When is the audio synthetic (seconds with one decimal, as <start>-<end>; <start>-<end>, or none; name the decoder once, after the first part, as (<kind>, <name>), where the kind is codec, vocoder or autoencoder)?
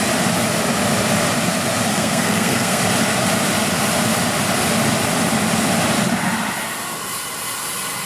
1.9-2.8 (codec, SNAC)